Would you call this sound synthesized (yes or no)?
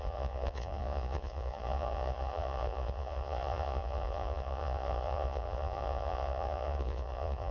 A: yes